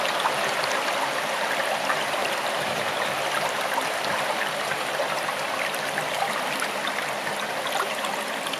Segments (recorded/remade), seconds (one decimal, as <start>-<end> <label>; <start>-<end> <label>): 0.0-2.2 recorded; 2.2-7.4 remade; 7.4-8.6 recorded